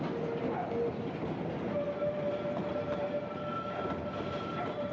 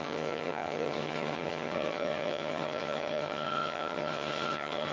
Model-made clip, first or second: second